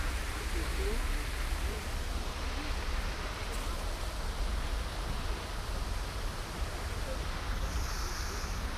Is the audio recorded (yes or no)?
yes